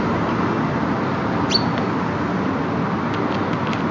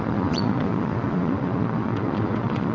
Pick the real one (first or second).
first